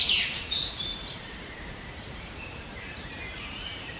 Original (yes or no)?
no